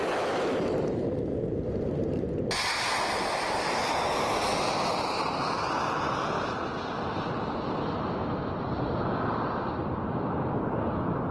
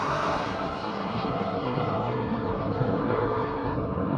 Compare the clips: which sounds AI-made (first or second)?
second